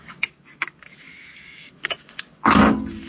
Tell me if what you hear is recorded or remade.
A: remade